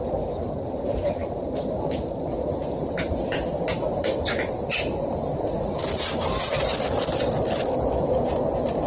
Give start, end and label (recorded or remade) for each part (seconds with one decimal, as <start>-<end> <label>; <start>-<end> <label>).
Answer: 0.0-8.9 recorded